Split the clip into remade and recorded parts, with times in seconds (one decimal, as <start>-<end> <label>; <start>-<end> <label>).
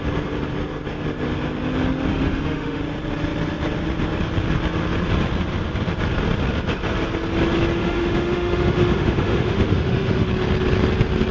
0.0-2.1 recorded; 2.1-2.8 remade; 2.8-7.8 recorded; 7.8-10.3 remade; 10.3-11.3 recorded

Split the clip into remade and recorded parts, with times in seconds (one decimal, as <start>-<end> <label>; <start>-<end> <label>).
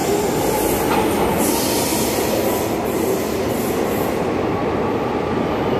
0.0-5.8 recorded